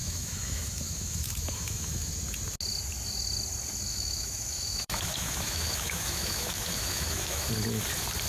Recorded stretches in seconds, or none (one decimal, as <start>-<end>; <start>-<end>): 2.1-3.9; 7.5-8.3